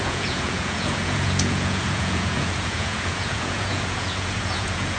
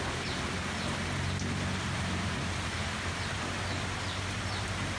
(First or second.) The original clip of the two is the second